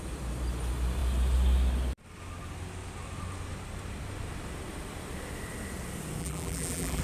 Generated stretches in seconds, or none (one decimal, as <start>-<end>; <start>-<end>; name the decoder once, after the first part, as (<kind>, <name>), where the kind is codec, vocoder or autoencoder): 6.2-7.0 (vocoder, BigVGAN v2)